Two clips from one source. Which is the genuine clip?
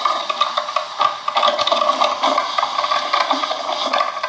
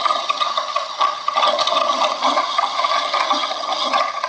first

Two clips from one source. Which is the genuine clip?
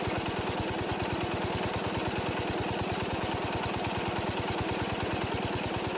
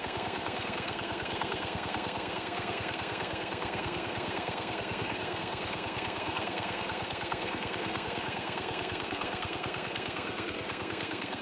first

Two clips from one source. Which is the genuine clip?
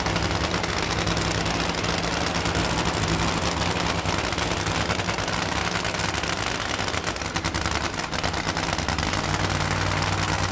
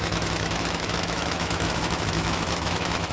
first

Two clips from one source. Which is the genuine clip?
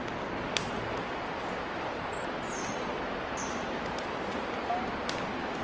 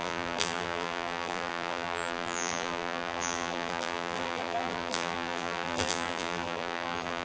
first